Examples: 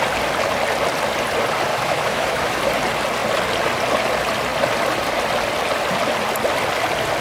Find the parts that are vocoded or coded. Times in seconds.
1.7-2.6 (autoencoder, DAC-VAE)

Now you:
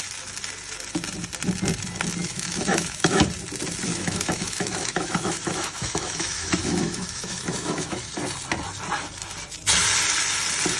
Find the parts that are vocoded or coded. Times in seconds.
2.2-3.2 (autoencoder, DAC-VAE); 3.9-8.1